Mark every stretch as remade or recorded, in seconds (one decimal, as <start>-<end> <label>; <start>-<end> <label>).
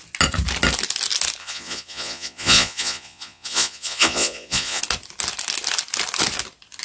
0.0-1.4 recorded; 1.4-4.8 remade; 4.8-6.8 recorded